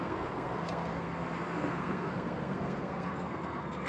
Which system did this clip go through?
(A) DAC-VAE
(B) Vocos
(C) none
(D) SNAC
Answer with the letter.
D